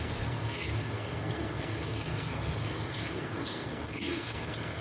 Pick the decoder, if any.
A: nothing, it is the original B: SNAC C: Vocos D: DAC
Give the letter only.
B